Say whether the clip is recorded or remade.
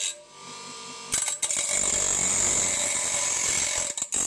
recorded